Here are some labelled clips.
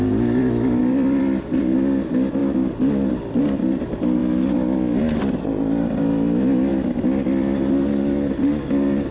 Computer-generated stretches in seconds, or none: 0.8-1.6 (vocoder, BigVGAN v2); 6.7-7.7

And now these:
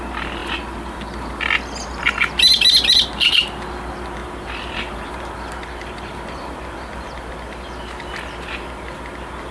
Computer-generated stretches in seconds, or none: 4.2-5.2 (vocoder, BigVGAN v2)

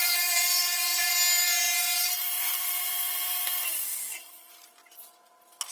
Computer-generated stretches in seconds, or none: 0.0-1.1 (vocoder, BigVGAN v2); 2.2-2.9

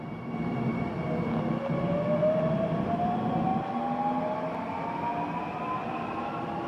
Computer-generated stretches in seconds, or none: none

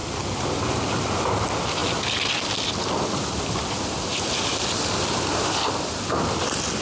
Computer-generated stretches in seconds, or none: none

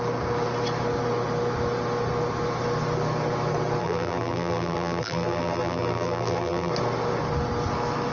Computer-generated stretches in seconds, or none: 3.8-6.7 (vocoder, BigVGAN v2)